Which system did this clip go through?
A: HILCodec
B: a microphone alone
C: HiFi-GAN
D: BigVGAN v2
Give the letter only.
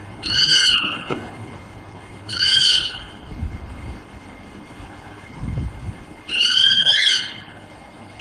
A